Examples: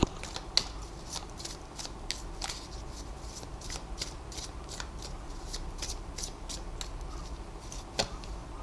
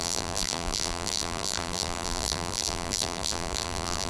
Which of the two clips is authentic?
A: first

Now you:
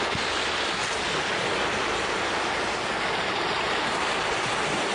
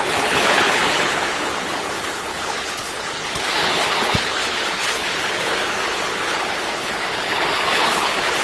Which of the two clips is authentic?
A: first